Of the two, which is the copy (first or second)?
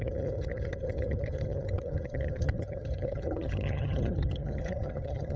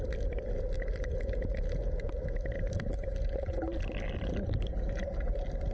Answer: first